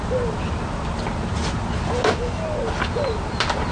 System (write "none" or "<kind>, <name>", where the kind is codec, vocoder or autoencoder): none